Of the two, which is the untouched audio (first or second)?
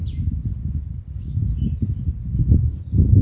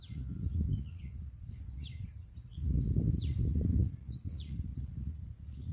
first